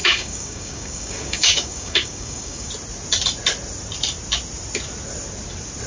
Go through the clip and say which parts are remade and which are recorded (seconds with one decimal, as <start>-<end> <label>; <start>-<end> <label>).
0.0-2.7 remade; 2.7-5.9 recorded

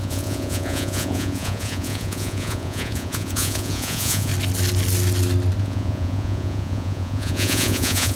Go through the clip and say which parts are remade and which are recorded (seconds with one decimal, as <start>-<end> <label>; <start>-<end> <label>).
0.0-4.3 remade; 4.3-5.6 recorded; 5.6-8.2 remade

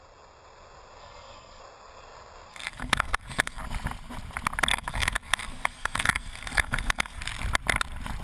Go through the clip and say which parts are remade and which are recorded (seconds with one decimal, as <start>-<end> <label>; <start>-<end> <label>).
0.0-1.0 recorded; 1.0-1.6 remade; 1.6-2.5 recorded; 2.5-3.6 remade; 3.6-4.7 recorded; 4.7-7.2 remade; 7.2-8.2 recorded

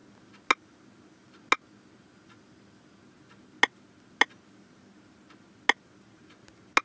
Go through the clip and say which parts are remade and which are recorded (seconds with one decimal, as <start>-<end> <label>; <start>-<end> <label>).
0.0-6.8 recorded

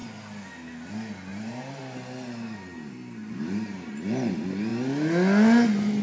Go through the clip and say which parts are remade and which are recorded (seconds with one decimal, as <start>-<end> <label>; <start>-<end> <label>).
0.0-1.3 recorded; 1.3-1.8 remade; 1.8-3.2 recorded; 3.2-4.3 remade; 4.3-6.0 recorded

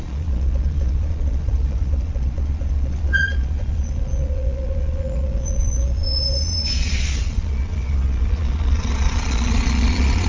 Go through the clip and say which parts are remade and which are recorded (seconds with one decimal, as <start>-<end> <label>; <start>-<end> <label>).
0.0-10.3 remade

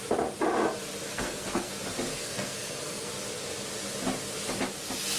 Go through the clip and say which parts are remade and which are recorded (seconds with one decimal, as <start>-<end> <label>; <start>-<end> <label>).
0.0-1.1 recorded; 1.1-1.7 remade; 1.7-2.1 recorded; 2.1-3.1 remade; 3.1-5.2 recorded